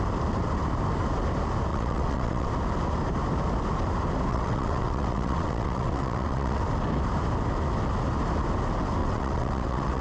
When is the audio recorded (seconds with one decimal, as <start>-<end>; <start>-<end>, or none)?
0.0-1.7; 2.5-4.3; 6.6-9.0